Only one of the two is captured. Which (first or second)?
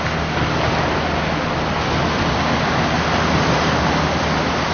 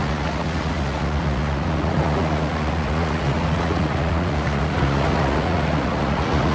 first